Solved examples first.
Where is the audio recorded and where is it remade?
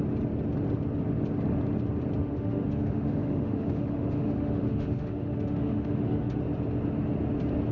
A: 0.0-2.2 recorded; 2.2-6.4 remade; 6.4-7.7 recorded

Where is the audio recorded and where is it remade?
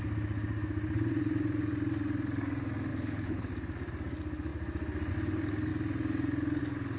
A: 0.0-2.9 recorded; 2.9-3.5 remade; 3.5-7.0 recorded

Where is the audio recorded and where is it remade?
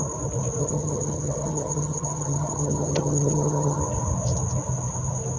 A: 0.0-0.6 recorded; 0.6-3.8 remade; 3.8-5.4 recorded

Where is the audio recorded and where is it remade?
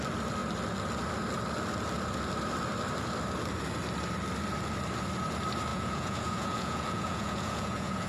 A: 0.0-5.7 recorded; 5.7-8.1 remade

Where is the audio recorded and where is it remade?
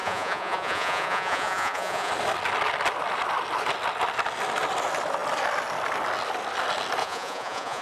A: 0.0-2.1 remade; 2.1-7.0 recorded; 7.0-7.8 remade